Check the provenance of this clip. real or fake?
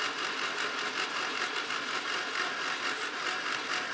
real